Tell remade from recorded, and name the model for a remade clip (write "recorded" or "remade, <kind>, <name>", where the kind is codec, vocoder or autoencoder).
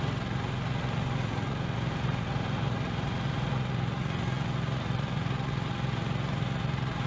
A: remade, vocoder, Vocos